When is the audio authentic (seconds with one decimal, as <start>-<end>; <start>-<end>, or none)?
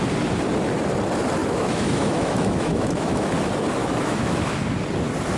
0.0-1.4; 3.3-3.8; 4.5-5.4